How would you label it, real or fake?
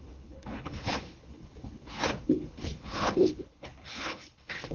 fake